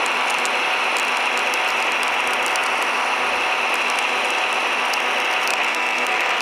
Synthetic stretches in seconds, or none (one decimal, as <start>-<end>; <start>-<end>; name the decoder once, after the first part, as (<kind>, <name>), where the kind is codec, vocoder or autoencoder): 5.5-6.4 (codec, SNAC)